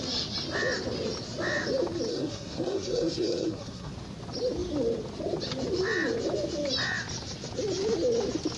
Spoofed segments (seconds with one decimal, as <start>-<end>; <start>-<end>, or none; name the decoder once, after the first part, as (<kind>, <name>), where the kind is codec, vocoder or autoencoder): 2.1-3.9 (codec, SNAC)